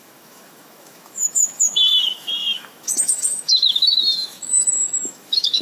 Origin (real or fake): fake